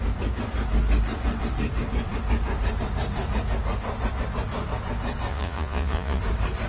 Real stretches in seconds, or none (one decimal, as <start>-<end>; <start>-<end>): 0.0-5.3; 6.2-6.7